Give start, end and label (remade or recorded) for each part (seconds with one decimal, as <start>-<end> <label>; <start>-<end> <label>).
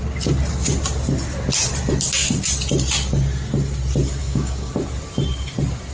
0.0-4.2 recorded; 4.2-4.7 remade; 4.7-5.9 recorded